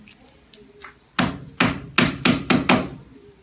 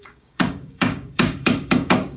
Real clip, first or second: first